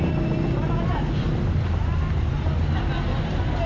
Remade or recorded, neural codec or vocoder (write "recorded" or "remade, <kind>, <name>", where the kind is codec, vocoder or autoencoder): recorded